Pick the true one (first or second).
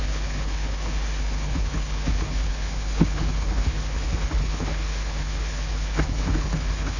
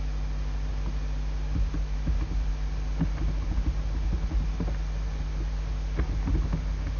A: second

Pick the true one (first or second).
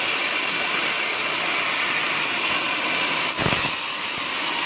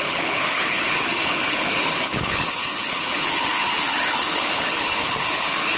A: first